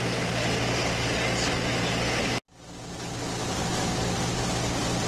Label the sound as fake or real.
real